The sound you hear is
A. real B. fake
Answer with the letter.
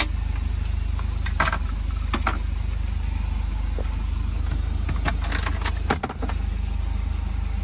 A